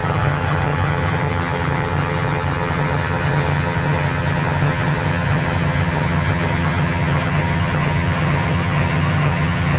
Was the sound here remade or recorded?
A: remade